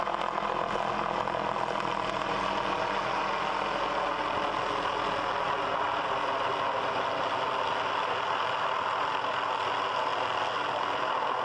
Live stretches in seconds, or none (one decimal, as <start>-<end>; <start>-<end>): 0.0-11.4